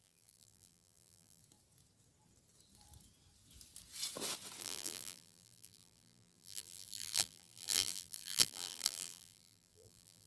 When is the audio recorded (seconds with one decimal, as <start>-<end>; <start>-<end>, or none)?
1.4-4.6